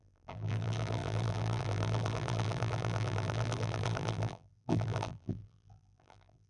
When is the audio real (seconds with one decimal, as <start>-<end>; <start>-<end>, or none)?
none